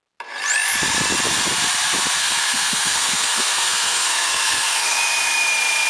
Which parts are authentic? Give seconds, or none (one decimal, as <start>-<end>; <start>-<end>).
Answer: 0.0-2.2; 5.0-5.9